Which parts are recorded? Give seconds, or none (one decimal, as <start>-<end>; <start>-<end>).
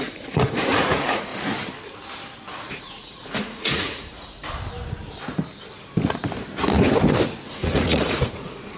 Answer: 1.3-2.7; 4.4-7.5